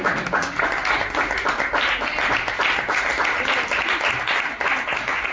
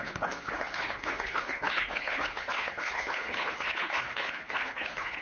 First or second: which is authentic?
first